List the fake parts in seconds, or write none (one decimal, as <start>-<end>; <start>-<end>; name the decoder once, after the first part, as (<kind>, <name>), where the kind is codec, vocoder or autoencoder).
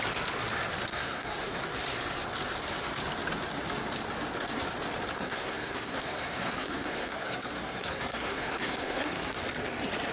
0.9-1.6 (codec, SNAC); 5.1-9.4